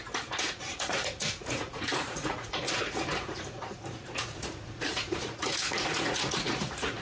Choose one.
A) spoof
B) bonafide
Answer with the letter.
A